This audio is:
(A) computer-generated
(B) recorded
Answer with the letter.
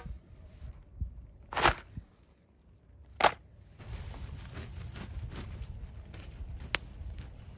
B